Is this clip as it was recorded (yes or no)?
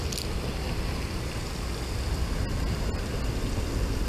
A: yes